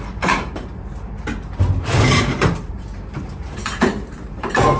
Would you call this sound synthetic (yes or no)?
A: yes